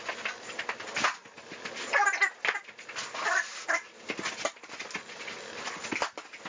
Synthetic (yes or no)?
no